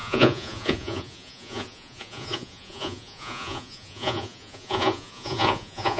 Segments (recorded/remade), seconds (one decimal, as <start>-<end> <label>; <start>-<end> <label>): 0.0-6.0 remade